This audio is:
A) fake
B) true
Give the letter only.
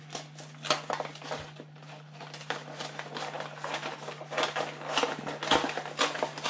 B